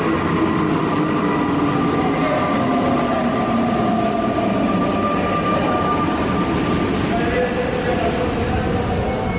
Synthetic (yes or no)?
no